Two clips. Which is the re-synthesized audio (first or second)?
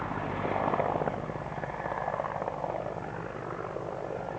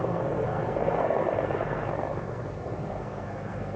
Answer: second